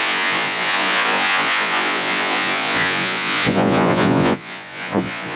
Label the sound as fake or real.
fake